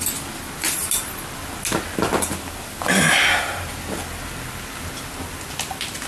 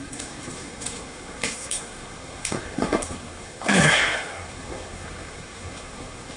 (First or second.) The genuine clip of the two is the first